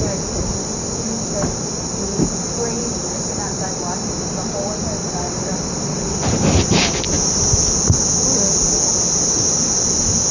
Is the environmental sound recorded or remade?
recorded